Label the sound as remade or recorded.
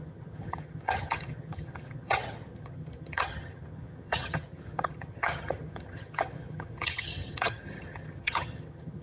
remade